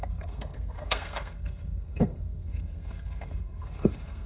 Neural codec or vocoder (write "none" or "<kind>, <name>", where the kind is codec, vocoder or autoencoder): codec, SNAC